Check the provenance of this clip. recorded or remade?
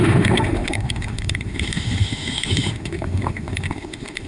remade